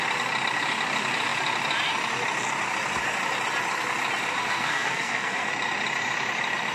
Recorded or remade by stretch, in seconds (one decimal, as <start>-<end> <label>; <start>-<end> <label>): 0.0-4.4 recorded; 4.4-5.5 remade; 5.5-6.7 recorded